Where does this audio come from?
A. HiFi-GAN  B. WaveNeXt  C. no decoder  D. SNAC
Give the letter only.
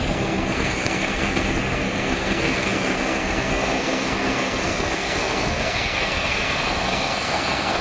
D